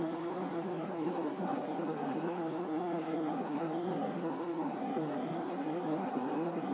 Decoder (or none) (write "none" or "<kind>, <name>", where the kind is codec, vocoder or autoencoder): codec, SNAC